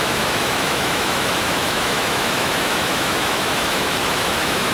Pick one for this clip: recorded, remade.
remade